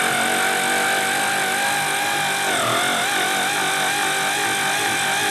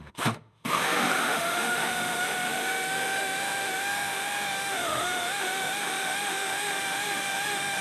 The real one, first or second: first